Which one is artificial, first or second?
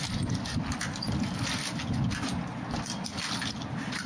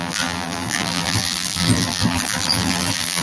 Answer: second